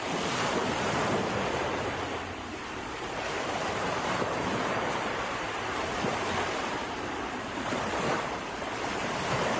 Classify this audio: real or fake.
fake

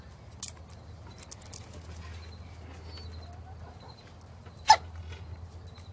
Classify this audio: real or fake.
real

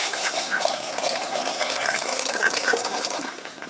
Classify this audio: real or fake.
fake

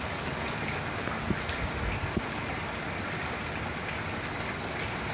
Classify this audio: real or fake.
real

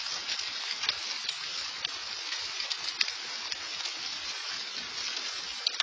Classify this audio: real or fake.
real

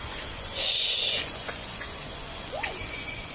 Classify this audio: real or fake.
fake